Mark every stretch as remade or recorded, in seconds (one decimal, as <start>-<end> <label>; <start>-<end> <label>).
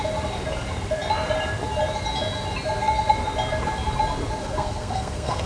0.0-4.4 recorded; 4.4-5.5 remade